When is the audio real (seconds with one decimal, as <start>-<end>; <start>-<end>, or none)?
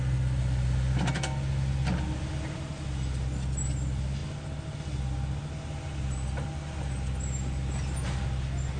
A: 0.0-8.8